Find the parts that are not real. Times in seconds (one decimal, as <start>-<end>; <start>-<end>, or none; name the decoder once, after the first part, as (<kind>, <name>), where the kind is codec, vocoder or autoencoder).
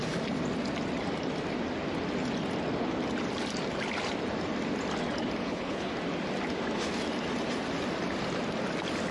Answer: 5.4-5.9 (codec, HILCodec)